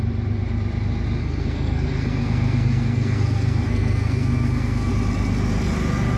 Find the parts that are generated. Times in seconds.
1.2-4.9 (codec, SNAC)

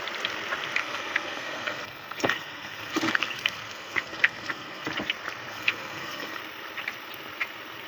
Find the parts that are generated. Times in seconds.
0.8-4.9 (codec, SNAC); 5.5-6.4